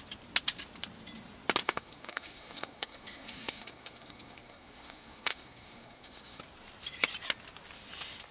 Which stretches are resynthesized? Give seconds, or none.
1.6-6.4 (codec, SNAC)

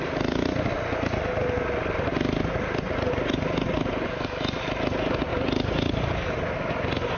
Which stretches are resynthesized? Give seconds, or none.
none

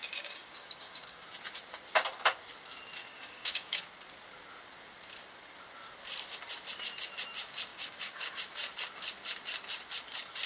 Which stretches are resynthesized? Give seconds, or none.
0.0-1.4 (codec, DAC); 3.0-3.8; 7.7-8.3